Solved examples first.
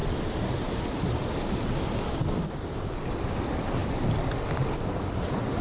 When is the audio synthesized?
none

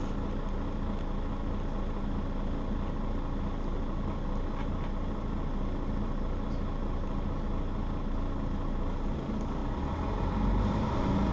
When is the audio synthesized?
none

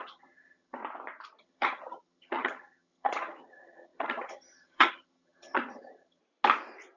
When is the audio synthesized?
0.0-0.8 (vocoder, HiFi-GAN); 1.4-6.2

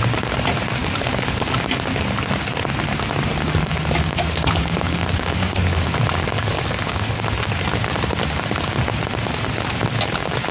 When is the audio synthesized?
0.8-1.6 (codec, DAC); 3.3-7.2

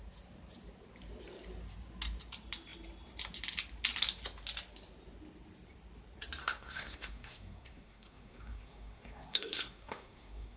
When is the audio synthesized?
6.4-10.6 (codec, SNAC)

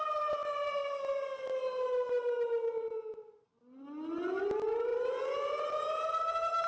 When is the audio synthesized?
none

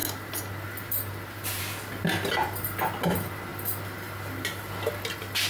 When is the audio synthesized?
none

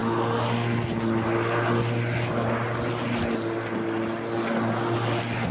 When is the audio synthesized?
none